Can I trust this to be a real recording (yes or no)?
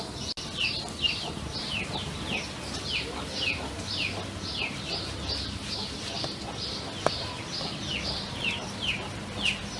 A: yes